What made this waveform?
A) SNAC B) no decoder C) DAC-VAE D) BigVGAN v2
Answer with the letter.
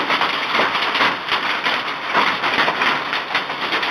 B